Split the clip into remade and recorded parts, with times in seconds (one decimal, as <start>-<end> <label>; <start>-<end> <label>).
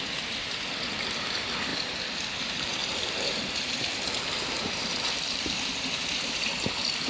0.0-2.8 recorded; 2.8-5.6 remade; 5.6-7.1 recorded